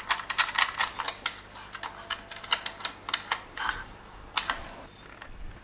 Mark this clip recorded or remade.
recorded